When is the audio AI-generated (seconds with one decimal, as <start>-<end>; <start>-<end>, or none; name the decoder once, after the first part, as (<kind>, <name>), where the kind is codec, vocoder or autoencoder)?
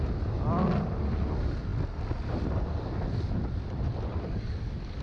4.1-5.0 (codec, DAC)